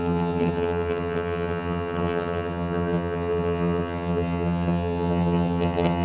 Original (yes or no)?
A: no